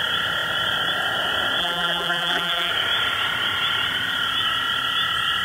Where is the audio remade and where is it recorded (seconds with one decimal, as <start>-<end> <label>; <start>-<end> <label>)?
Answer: 0.0-1.6 recorded; 1.6-2.7 remade; 2.7-5.4 recorded

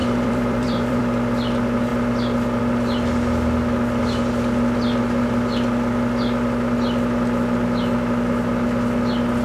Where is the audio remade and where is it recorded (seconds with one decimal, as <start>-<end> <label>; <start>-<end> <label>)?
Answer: 0.0-1.0 remade; 1.0-9.4 recorded

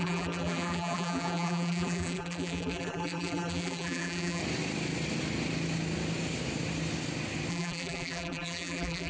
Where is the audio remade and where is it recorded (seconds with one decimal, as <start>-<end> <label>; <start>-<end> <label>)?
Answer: 0.0-4.4 remade; 4.4-7.5 recorded; 7.5-9.1 remade

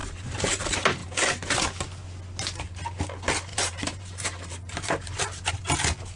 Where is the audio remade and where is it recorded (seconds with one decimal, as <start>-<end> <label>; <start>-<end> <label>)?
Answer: 0.0-0.6 remade; 0.6-1.0 recorded; 1.0-1.6 remade; 1.6-3.5 recorded; 3.5-5.5 remade; 5.5-6.2 recorded

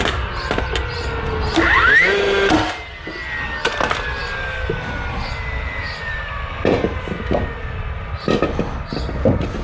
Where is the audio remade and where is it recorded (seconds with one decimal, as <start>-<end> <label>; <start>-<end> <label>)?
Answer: 0.0-5.8 recorded; 5.8-6.3 remade; 6.3-9.6 recorded

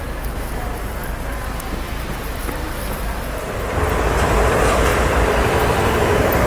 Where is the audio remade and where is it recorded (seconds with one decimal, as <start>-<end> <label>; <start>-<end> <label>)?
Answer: 0.0-6.5 recorded

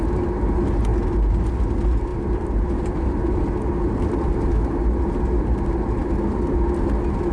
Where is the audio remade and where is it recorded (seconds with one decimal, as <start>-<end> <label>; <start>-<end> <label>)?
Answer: 0.0-7.3 recorded